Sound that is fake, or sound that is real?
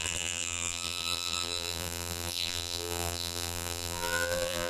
fake